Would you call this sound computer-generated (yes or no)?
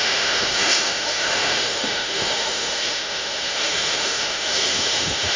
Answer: yes